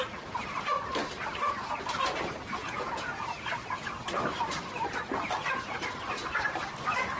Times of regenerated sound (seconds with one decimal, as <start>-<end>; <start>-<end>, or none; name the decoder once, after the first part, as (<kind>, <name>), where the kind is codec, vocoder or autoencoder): 2.6-3.2 (vocoder, Vocos)